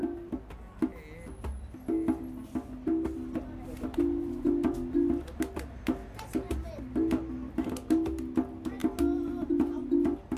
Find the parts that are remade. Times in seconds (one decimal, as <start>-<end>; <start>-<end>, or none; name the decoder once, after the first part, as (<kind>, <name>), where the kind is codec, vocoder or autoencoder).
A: none